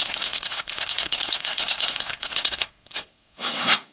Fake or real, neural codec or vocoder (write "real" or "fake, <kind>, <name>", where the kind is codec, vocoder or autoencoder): fake, codec, SNAC